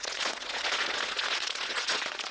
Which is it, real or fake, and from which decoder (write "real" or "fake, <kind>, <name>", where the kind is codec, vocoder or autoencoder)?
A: fake, vocoder, Vocos